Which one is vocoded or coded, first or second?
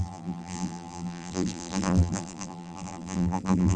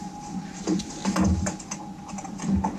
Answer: first